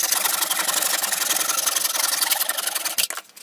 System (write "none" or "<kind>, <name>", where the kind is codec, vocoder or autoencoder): none